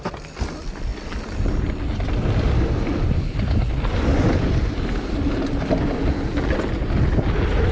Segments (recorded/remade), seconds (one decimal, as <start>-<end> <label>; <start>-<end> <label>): 0.0-7.7 recorded